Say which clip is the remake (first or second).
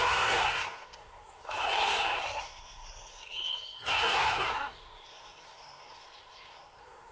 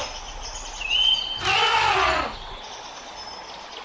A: first